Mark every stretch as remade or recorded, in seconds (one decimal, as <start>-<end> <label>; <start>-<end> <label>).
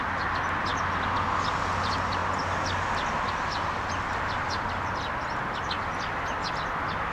0.0-7.1 recorded